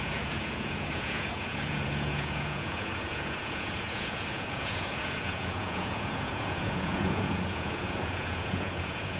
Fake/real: fake